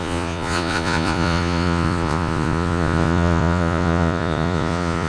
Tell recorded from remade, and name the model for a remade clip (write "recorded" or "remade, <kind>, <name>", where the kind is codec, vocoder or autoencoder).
remade, vocoder, Vocos